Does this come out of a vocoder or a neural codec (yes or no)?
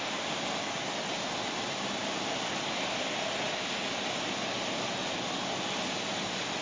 yes